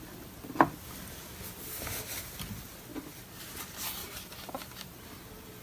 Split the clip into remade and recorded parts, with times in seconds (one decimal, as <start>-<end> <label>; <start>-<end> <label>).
0.0-4.0 recorded; 4.0-4.9 remade; 4.9-5.6 recorded